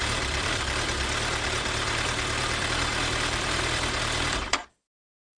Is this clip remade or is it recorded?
remade